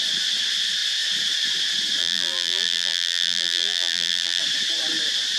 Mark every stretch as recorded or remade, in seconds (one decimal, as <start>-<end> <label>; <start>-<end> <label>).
0.0-2.0 recorded; 2.0-4.4 remade; 4.4-5.4 recorded